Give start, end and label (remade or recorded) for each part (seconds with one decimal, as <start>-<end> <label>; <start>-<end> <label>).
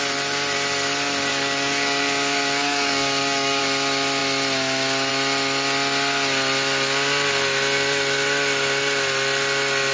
0.0-1.3 recorded; 1.3-3.6 remade; 3.6-9.9 recorded